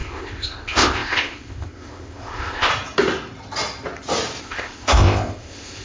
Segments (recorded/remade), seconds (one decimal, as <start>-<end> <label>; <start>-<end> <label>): 0.0-2.7 remade; 2.7-4.4 recorded; 4.4-5.8 remade